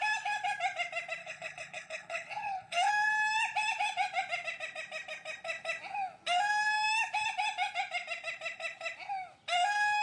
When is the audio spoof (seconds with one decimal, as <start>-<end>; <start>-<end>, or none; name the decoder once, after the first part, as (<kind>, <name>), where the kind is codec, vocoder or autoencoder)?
1.2-2.9 (codec, HILCodec)